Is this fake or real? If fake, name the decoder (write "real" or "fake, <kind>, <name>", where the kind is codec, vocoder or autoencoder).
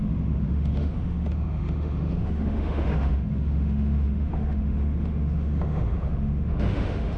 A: fake, autoencoder, DAC-VAE